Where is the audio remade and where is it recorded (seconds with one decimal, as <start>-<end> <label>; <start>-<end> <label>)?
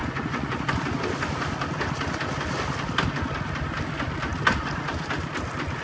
0.0-0.6 remade; 0.6-5.8 recorded